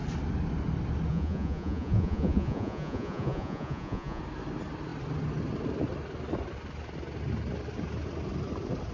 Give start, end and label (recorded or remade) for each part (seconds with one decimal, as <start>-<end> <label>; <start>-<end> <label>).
0.0-1.1 recorded; 1.1-4.2 remade; 4.2-8.9 recorded